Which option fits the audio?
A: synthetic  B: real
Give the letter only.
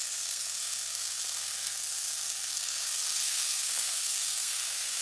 A